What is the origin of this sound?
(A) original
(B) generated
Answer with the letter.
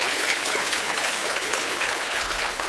B